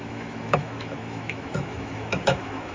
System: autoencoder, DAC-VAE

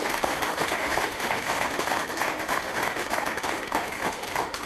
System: autoencoder, DAC-VAE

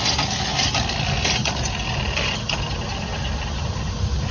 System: none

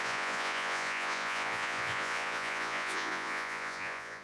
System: vocoder, Vocos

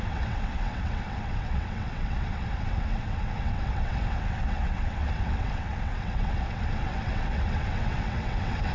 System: vocoder, WaveNeXt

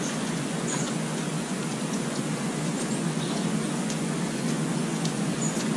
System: vocoder, Vocos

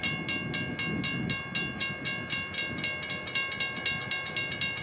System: none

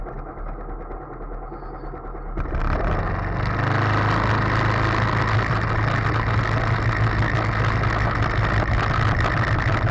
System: none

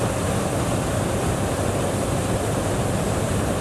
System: none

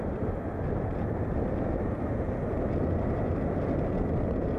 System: none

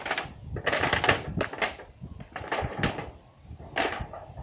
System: none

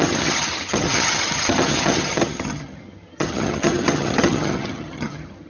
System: vocoder, HiFi-GAN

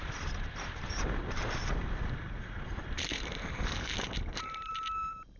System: vocoder, BigVGAN v2